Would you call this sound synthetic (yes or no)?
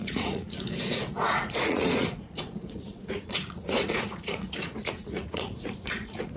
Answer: yes